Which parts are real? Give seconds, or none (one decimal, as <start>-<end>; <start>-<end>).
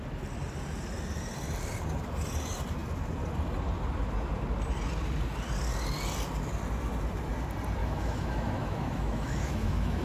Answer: 0.0-7.8